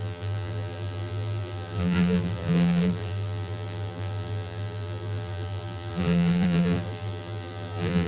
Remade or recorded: remade